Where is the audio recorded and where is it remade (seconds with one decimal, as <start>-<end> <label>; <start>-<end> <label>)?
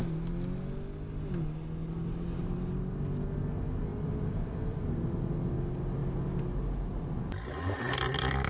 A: 0.0-3.9 recorded; 3.9-5.0 remade; 5.0-8.5 recorded